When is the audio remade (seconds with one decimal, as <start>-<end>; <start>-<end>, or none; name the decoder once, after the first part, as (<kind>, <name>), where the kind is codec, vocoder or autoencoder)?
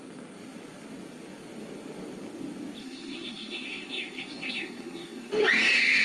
2.8-5.3 (codec, SNAC)